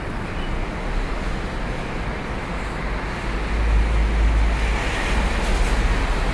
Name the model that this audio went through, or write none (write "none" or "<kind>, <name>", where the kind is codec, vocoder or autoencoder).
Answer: none